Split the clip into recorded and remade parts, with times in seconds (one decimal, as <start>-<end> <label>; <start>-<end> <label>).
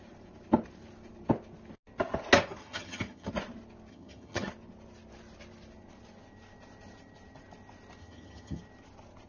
0.0-2.6 recorded; 2.6-3.3 remade; 3.3-3.9 recorded; 3.9-4.5 remade; 4.5-8.0 recorded; 8.0-8.6 remade; 8.6-9.3 recorded